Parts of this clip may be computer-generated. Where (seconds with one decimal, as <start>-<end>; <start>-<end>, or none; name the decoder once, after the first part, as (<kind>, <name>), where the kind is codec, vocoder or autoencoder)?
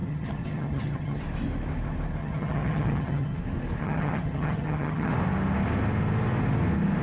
0.0-1.2 (vocoder, HiFi-GAN); 2.2-3.4; 3.8-5.1